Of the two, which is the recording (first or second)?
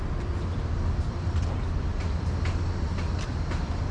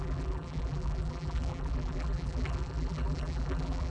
first